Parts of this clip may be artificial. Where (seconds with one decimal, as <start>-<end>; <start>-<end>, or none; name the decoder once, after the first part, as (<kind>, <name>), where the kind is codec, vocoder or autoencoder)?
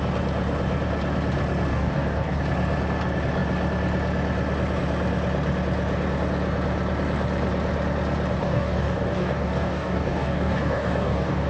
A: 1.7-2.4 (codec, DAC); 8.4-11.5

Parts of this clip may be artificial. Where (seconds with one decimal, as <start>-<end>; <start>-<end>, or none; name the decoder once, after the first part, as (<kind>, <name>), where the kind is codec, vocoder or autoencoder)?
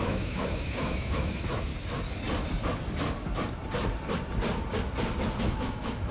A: 0.0-1.7 (autoencoder, DAC-VAE); 5.4-6.1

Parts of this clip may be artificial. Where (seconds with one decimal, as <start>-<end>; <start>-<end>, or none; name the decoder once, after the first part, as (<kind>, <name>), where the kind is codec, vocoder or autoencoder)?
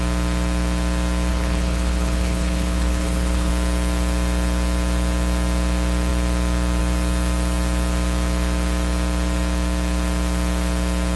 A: 1.3-3.5 (codec, HILCodec)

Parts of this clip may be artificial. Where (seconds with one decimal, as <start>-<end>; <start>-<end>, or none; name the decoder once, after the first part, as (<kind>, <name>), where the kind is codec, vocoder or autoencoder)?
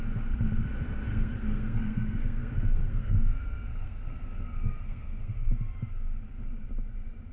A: 1.1-5.5 (codec, SNAC)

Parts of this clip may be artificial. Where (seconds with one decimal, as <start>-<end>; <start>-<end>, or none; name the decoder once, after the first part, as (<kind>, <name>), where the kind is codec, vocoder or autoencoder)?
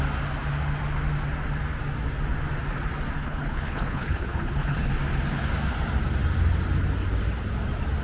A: 3.2-4.9 (codec, HILCodec)